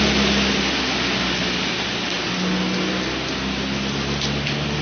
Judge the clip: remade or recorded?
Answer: recorded